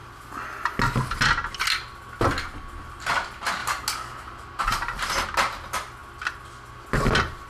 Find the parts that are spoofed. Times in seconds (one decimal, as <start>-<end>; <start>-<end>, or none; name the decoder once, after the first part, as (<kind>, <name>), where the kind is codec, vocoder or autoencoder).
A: none